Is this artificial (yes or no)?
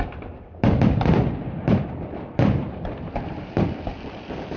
yes